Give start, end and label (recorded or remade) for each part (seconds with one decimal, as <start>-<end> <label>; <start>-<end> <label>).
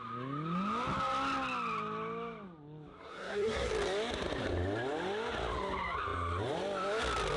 0.0-2.9 recorded; 2.9-3.7 remade; 3.7-7.4 recorded